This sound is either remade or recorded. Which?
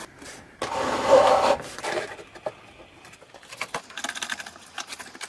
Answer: recorded